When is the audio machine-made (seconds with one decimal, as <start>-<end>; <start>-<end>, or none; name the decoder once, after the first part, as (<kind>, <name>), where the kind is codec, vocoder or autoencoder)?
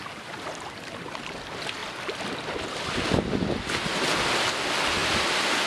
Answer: none